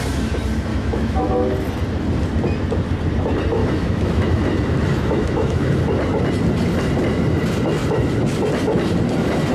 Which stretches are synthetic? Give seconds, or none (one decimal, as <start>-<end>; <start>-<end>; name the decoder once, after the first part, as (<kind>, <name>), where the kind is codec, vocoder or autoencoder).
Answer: 0.7-1.3 (autoencoder, DAC-VAE); 3.6-4.4; 4.9-5.7